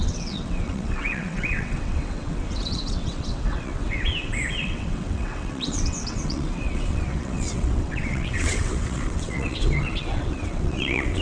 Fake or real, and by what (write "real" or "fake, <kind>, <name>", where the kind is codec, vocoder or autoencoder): fake, vocoder, WaveNeXt